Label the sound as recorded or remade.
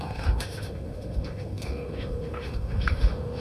remade